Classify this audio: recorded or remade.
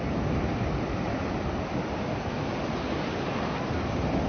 recorded